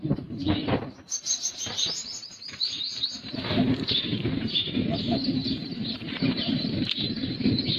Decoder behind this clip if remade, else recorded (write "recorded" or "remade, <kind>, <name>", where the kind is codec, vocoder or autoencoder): remade, vocoder, BigVGAN v2